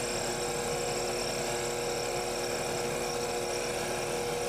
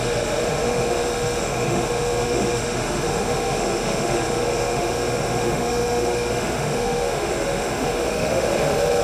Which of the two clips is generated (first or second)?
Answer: second